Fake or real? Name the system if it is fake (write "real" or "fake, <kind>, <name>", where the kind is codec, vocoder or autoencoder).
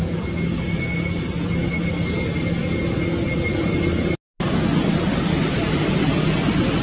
real